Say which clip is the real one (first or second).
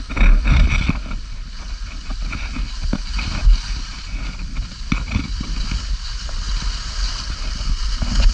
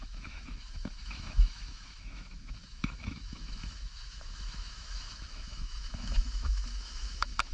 first